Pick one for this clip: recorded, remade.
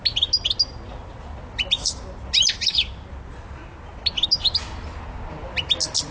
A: recorded